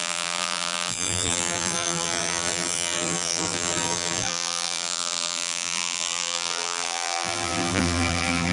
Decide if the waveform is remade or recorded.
remade